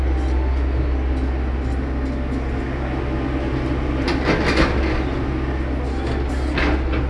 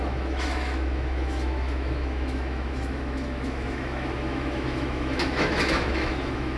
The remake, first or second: second